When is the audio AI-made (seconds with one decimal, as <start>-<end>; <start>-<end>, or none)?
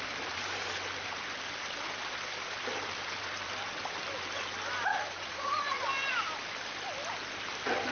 4.9-5.8